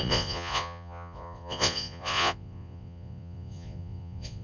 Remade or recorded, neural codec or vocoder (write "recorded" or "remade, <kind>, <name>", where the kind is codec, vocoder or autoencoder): remade, vocoder, Vocos